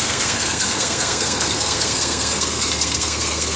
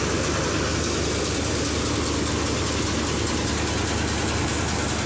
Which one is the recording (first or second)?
second